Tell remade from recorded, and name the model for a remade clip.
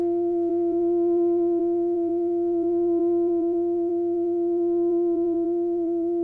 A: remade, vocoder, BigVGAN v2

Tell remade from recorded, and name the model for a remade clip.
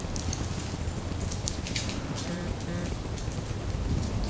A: remade, vocoder, BigVGAN v2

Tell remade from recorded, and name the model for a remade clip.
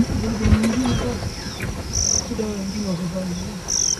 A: recorded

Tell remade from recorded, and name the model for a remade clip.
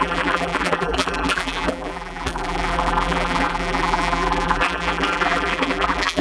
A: remade, vocoder, BigVGAN v2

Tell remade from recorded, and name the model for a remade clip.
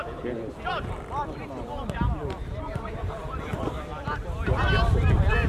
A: remade, vocoder, BigVGAN v2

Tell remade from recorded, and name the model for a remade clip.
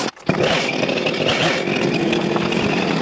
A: recorded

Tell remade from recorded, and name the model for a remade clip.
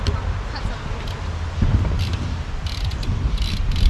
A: recorded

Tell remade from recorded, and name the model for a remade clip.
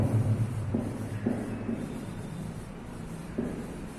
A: remade, vocoder, BigVGAN v2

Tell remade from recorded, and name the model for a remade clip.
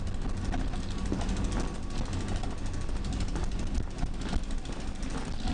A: recorded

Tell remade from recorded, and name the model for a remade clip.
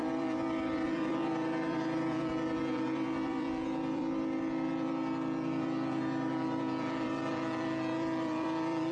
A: remade, vocoder, BigVGAN v2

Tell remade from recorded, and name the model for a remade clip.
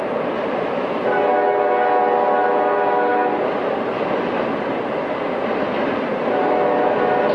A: recorded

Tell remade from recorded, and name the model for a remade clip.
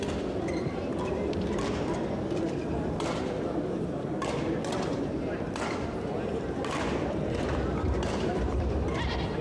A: remade, vocoder, BigVGAN v2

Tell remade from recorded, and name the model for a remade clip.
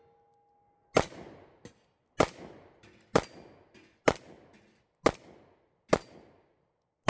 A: recorded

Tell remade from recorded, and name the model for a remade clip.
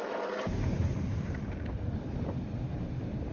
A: recorded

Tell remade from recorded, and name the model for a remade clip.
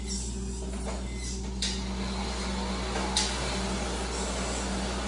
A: recorded